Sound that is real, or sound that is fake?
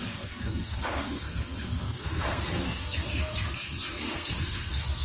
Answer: fake